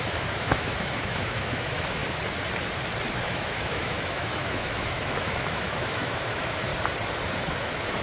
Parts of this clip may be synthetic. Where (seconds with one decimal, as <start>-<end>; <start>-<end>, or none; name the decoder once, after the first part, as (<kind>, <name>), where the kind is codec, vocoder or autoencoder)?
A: 0.0-2.0 (autoencoder, DAC-VAE); 3.1-6.7; 7.6-8.0